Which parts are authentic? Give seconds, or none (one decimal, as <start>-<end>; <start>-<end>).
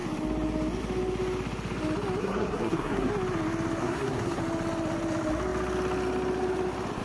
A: 0.0-2.2; 3.1-3.8; 4.4-7.0